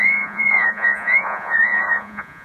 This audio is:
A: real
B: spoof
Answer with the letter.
B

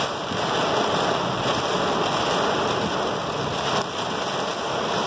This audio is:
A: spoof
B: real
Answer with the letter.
B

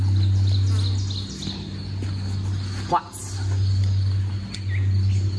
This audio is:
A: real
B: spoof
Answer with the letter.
A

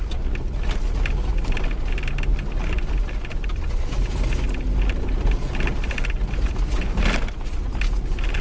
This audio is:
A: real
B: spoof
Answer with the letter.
A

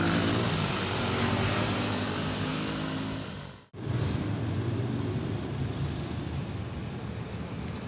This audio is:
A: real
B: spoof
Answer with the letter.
A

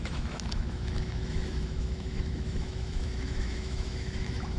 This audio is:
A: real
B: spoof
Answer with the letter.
B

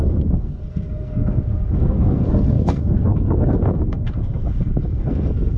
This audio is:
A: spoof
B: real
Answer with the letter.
A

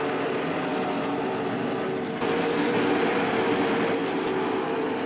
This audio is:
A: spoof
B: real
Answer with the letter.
B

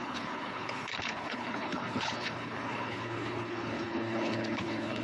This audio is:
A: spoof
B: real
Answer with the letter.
A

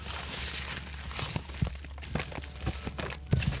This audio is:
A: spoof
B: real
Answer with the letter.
B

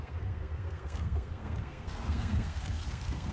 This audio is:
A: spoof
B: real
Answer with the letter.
A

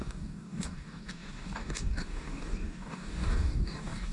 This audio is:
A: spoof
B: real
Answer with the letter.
A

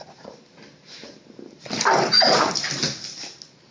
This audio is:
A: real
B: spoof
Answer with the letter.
A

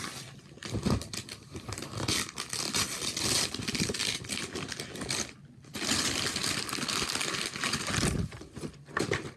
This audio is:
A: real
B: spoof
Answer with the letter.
A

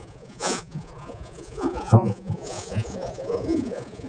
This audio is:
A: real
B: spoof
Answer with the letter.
B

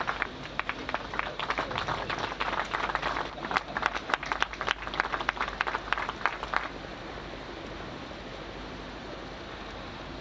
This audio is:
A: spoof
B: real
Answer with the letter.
B